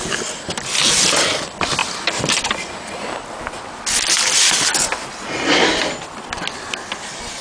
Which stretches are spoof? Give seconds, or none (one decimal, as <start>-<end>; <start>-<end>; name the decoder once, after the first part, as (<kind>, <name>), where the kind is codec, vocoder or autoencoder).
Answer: none